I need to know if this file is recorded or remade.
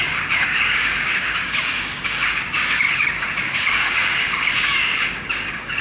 remade